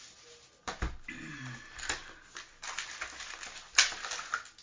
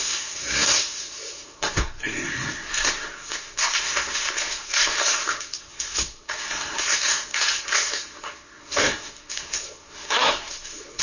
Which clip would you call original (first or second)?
first